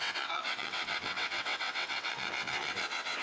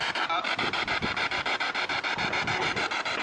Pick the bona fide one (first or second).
second